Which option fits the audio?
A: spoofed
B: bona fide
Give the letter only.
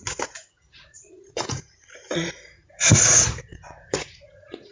A